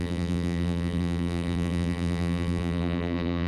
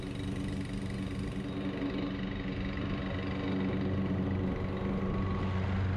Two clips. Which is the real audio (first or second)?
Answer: second